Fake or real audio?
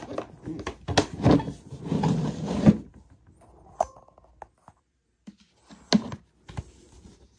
real